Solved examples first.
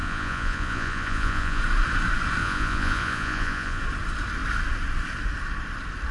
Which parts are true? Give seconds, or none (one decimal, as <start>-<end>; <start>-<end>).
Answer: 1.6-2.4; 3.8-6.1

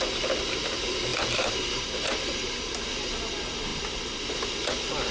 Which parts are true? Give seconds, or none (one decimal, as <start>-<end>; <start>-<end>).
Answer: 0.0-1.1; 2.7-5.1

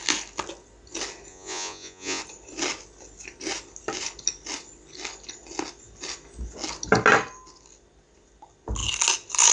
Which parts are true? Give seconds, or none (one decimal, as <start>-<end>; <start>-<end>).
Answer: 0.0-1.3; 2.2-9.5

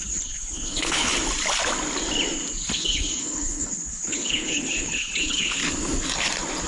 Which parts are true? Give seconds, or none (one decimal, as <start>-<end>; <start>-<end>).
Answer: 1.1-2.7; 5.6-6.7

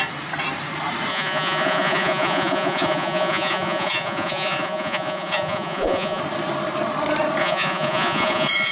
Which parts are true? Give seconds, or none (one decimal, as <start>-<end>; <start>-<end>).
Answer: 0.0-1.1; 6.2-7.4